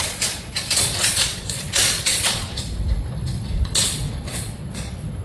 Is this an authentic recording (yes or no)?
no